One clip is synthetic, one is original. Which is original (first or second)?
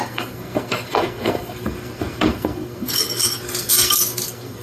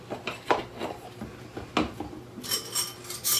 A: second